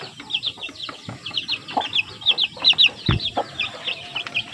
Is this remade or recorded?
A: recorded